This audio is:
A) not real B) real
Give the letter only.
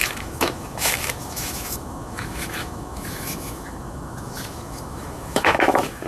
A